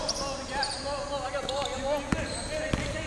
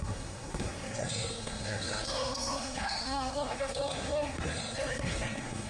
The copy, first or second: second